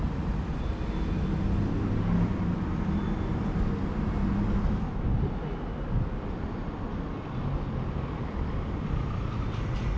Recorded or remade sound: recorded